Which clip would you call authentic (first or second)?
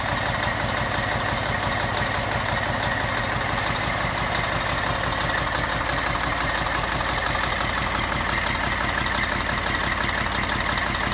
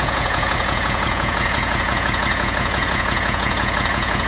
first